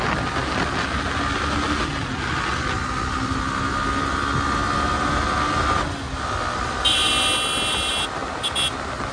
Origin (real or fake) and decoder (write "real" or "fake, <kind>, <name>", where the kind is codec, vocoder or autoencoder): real